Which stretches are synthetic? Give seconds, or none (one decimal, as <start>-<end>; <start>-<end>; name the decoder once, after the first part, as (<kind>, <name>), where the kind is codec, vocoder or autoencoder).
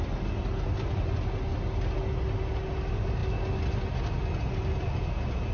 none